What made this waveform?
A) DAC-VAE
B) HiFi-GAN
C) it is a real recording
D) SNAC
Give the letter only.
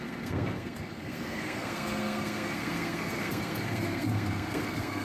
D